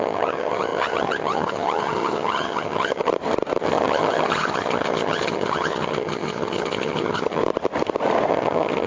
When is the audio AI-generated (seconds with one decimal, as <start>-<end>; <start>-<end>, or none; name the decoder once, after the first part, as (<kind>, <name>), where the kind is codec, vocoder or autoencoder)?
0.0-3.1 (vocoder, HiFi-GAN); 3.6-7.4; 8.3-8.9

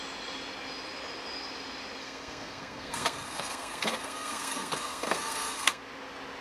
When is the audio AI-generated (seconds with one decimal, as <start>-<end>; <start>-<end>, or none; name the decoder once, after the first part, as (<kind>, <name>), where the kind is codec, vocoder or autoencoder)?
2.0-5.8 (codec, SNAC)

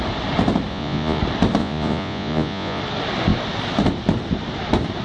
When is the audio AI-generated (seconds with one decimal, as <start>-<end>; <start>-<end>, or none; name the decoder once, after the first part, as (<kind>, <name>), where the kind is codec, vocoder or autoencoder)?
0.7-1.2 (vocoder, Vocos); 1.6-2.8

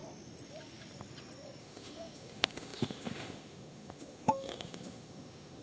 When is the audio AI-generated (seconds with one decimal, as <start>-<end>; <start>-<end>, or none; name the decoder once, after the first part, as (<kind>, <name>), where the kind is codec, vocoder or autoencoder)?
1.6-5.6 (autoencoder, DAC-VAE)

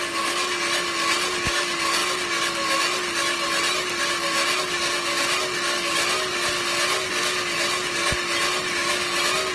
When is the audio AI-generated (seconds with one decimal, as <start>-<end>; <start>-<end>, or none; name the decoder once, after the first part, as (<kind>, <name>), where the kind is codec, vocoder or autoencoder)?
none